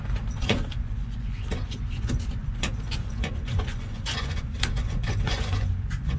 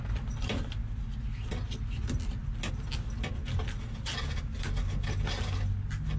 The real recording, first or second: second